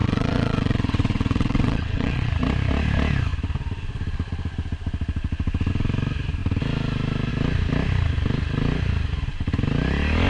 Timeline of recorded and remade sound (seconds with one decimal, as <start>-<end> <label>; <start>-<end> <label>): 0.0-2.3 remade; 2.3-10.3 recorded